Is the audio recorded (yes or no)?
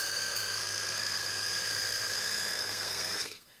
no